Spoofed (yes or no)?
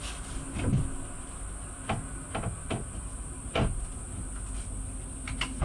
no